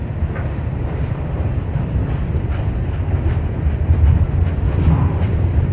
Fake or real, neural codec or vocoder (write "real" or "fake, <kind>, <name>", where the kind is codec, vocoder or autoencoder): real